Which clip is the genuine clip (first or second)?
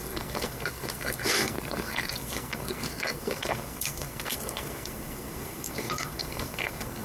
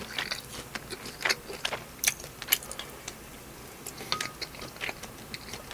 second